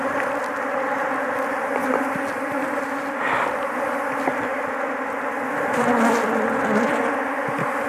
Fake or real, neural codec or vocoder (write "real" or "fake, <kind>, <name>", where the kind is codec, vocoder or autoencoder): real